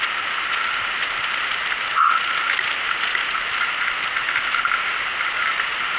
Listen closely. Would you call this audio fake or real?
real